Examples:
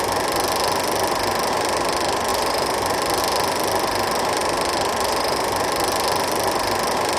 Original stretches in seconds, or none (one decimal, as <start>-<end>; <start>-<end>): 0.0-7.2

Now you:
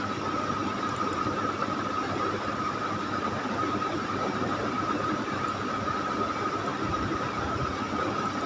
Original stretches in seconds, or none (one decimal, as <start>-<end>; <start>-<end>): 0.0-0.6; 5.4-6.7; 7.7-8.5

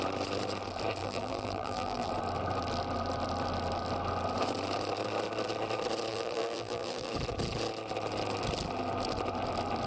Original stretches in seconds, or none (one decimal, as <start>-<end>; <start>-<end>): 0.0-1.0; 2.1-6.1; 7.1-9.9

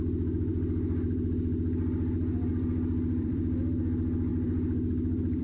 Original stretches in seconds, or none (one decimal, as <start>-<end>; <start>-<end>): 0.0-0.5; 3.7-4.3

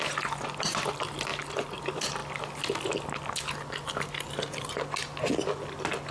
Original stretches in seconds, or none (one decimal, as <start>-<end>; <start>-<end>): 0.0-1.3; 1.8-6.1

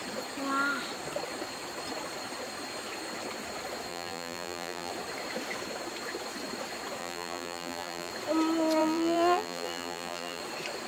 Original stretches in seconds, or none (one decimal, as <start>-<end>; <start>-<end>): 0.0-3.9; 4.9-7.0; 8.1-8.8; 10.4-10.9

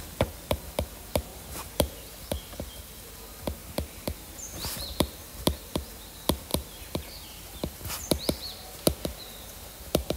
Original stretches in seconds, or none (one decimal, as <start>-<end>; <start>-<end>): 0.0-1.3; 2.7-3.6; 4.7-6.5

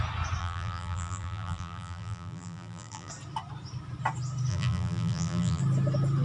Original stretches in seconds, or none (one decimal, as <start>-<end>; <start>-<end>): 0.0-0.4; 3.1-4.5; 5.6-6.2